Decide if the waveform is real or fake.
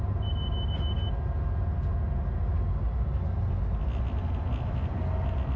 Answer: real